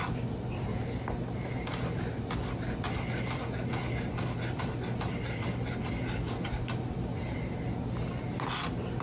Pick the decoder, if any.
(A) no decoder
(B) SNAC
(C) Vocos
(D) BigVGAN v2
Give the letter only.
A